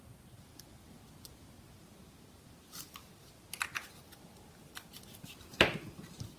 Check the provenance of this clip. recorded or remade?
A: recorded